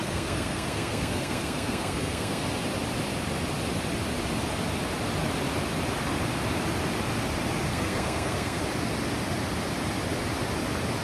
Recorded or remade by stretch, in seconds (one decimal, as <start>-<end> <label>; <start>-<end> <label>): 0.0-2.4 remade; 2.4-7.7 recorded; 7.7-8.6 remade; 8.6-11.0 recorded